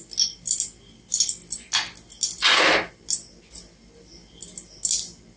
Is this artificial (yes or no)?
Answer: no